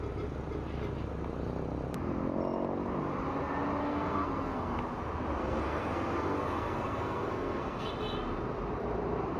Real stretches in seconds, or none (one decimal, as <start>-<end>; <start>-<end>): 0.0-3.8; 4.8-5.4; 7.9-9.4